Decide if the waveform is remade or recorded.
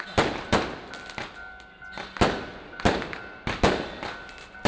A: recorded